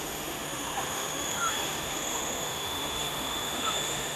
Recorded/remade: remade